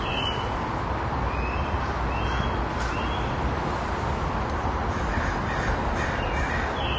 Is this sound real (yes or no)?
yes